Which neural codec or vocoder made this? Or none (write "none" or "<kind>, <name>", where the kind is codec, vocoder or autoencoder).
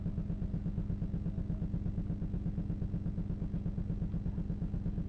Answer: none